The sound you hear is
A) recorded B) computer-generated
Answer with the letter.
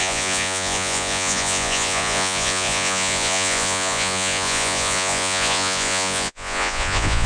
B